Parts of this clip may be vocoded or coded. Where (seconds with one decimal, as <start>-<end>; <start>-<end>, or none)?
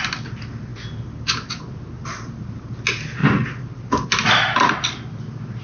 none